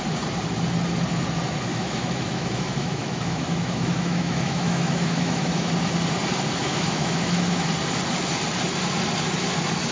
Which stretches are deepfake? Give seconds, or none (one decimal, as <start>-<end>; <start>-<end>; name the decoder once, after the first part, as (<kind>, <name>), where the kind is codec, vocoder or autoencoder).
1.7-5.7 (autoencoder, DAC-VAE); 6.6-7.7